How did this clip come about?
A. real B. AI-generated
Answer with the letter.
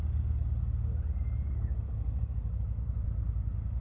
A